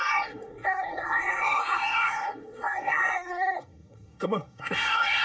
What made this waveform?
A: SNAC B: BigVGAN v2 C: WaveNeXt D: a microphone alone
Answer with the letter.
A